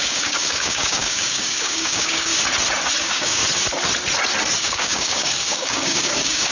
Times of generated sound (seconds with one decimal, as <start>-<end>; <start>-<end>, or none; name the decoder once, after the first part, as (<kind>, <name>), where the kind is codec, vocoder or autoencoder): 0.0-2.3 (codec, DAC); 3.0-3.4; 4.6-6.5